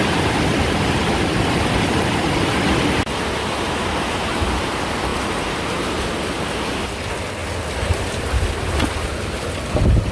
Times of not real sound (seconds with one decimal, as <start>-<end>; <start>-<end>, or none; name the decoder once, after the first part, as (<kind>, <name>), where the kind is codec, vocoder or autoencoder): none

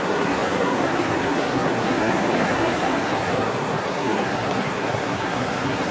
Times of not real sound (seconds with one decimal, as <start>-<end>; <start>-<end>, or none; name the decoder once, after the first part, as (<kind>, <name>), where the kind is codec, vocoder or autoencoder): 0.0-5.9 (codec, SNAC)

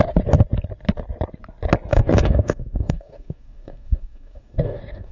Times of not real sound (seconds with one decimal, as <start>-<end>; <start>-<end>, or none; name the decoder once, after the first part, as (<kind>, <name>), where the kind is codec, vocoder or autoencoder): 1.9-5.1 (codec, DAC)

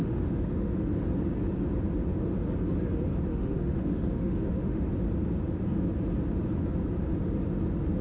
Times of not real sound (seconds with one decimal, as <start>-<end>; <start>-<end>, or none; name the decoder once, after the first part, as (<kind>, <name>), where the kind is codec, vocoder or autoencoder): 0.0-0.9 (autoencoder, DAC-VAE); 3.3-4.9

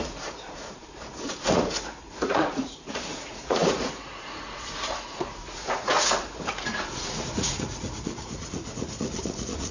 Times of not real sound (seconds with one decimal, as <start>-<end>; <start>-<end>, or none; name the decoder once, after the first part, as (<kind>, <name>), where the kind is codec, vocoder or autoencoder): 0.0-9.7 (vocoder, Vocos)

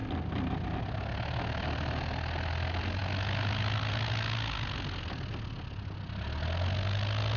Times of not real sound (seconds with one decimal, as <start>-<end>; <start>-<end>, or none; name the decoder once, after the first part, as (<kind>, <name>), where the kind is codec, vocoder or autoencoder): none

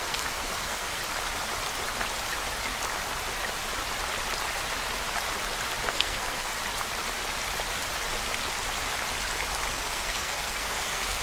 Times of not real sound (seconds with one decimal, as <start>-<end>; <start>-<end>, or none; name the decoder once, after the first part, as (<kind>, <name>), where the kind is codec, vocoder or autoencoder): 0.0-1.0 (codec, SNAC); 5.9-6.5; 9.7-11.2

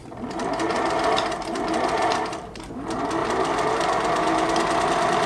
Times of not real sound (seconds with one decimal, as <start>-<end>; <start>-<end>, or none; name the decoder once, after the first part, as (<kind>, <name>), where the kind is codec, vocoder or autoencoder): 0.0-2.5 (vocoder, BigVGAN v2); 3.2-3.7